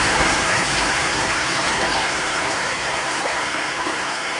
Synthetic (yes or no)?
yes